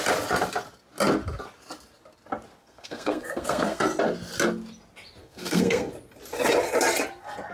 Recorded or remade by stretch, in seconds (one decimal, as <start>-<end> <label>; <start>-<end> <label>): 0.0-2.6 recorded; 2.6-3.8 remade; 3.8-5.2 recorded; 5.2-5.9 remade; 5.9-7.5 recorded